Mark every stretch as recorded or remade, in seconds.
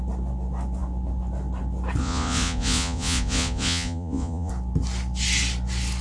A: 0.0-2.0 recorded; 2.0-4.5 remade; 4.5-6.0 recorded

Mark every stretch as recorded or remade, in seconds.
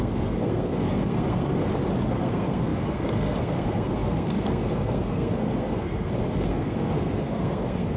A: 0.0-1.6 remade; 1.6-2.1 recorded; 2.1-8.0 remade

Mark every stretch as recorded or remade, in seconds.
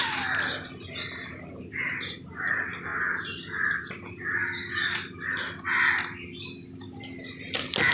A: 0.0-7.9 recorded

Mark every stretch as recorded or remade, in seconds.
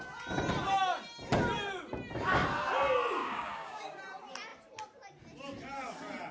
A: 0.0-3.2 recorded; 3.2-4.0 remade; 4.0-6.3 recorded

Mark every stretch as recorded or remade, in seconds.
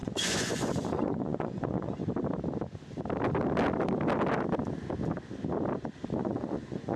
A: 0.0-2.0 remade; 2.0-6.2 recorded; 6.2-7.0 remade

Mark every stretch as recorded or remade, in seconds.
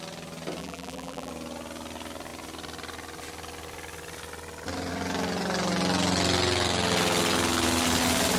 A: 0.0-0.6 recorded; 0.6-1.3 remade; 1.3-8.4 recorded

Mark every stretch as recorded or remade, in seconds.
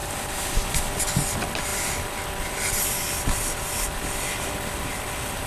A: 0.0-5.5 recorded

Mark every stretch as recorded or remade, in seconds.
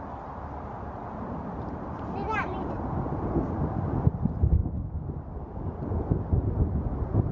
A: 0.0-7.3 recorded